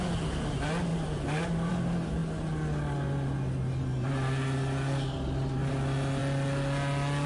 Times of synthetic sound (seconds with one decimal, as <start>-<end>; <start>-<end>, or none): none